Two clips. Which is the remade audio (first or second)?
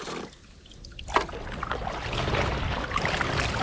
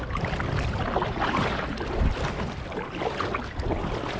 second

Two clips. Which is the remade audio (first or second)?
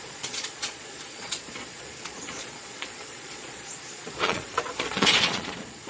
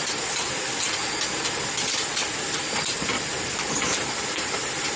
first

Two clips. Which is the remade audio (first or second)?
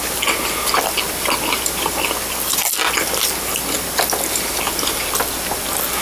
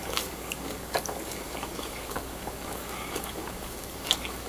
second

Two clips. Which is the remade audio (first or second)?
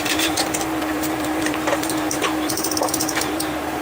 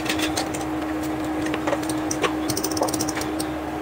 first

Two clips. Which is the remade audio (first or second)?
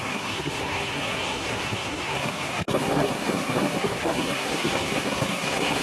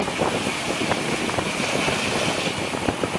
first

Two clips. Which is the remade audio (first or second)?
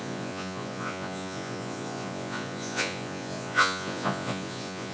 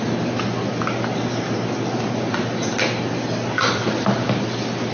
first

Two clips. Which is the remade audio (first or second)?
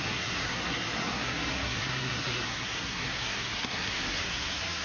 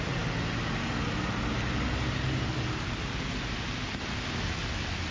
first